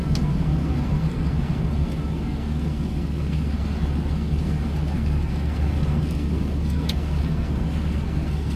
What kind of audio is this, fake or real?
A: fake